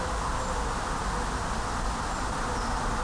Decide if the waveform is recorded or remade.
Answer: recorded